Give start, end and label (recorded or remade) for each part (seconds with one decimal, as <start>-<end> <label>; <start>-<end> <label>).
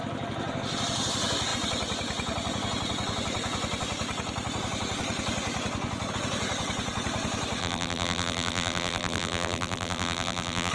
0.0-7.6 recorded; 7.6-10.7 remade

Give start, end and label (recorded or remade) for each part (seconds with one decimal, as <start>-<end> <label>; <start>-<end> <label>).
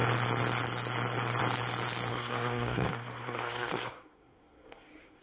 0.0-2.1 recorded; 2.1-5.2 remade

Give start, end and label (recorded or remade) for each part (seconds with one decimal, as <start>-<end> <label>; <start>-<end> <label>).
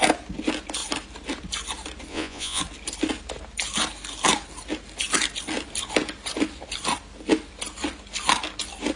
0.0-2.1 recorded; 2.1-2.6 remade; 2.6-9.0 recorded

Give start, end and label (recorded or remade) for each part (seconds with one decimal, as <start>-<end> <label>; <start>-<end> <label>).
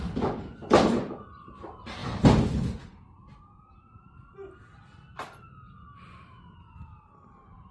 0.0-7.7 recorded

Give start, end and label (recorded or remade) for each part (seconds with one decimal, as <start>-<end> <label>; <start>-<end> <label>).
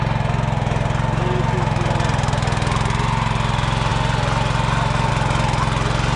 0.0-6.2 recorded